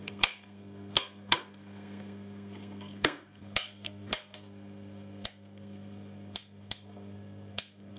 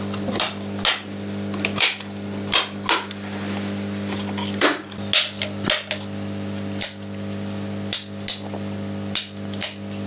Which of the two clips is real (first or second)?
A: second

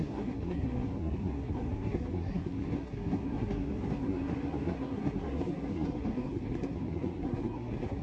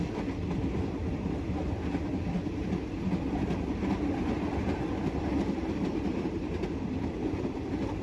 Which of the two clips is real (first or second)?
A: second